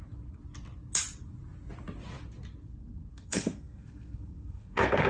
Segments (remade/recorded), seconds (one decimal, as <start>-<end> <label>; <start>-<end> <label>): 0.0-2.6 recorded; 2.6-5.1 remade